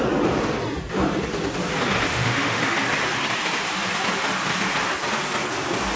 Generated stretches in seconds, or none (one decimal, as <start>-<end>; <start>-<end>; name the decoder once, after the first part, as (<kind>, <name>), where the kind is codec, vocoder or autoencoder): 2.1-2.6 (autoencoder, DAC-VAE)